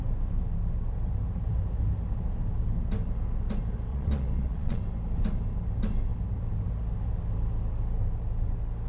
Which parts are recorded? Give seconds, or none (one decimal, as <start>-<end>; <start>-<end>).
0.0-3.9; 4.8-8.9